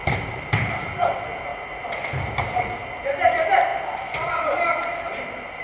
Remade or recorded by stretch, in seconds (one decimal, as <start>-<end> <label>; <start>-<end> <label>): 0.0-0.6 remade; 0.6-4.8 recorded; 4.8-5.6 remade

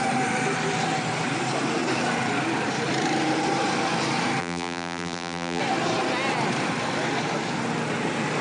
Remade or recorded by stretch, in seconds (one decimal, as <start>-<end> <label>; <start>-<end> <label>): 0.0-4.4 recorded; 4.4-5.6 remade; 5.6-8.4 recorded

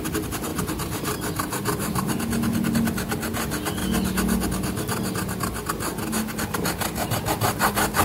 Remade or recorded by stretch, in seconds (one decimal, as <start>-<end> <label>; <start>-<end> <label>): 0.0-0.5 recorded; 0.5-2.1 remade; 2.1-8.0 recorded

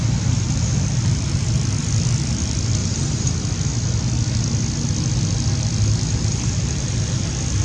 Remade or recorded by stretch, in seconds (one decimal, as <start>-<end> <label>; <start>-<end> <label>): 0.0-2.8 recorded; 2.8-3.3 remade; 3.3-7.6 recorded